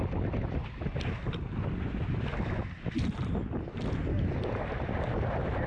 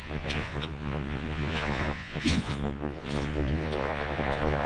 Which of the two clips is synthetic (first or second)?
second